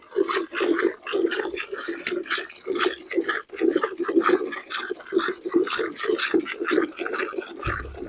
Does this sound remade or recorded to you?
recorded